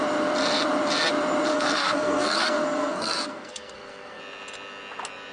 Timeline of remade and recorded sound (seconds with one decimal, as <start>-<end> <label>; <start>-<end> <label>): 0.0-1.5 recorded; 1.5-4.2 remade; 4.2-5.3 recorded